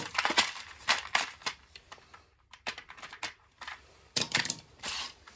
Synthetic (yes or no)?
yes